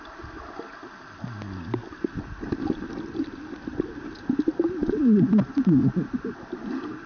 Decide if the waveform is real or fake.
real